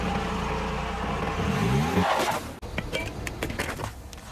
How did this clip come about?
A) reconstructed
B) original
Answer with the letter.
B